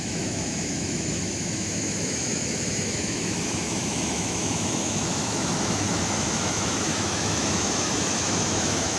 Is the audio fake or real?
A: fake